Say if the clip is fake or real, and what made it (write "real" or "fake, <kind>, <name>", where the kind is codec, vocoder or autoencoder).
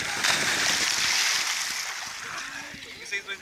real